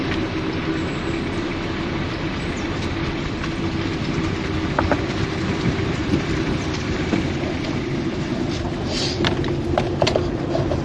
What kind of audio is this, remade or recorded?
remade